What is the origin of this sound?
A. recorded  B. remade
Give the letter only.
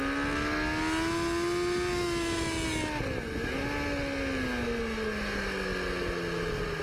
A